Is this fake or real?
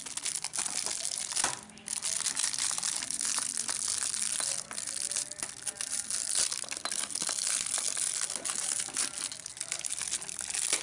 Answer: real